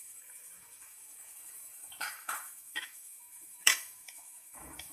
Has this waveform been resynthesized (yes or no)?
yes